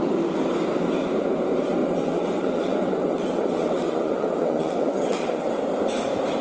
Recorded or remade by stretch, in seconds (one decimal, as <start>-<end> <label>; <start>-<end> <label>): 0.0-1.8 recorded; 1.8-5.6 remade; 5.6-6.4 recorded